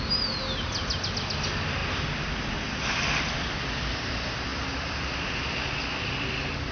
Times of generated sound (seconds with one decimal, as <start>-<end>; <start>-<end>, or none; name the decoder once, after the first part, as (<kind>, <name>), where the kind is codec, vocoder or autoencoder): none